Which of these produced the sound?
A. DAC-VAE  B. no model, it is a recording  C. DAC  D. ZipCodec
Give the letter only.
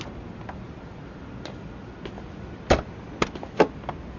B